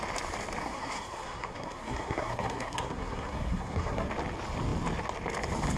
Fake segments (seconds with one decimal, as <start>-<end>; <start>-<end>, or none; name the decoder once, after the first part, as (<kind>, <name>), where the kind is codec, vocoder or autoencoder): 0.6-4.1 (codec, SNAC)